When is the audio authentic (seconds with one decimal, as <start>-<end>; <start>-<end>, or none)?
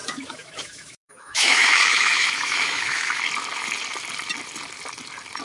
3.2-5.4